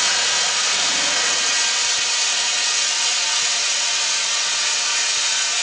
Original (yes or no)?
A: no